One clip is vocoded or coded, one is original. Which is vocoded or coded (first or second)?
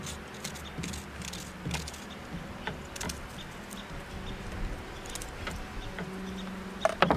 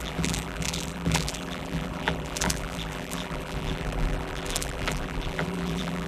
second